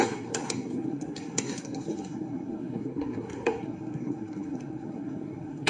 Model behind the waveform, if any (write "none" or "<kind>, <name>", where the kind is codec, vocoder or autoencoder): codec, SNAC